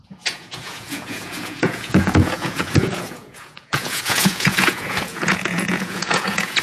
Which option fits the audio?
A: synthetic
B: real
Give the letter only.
A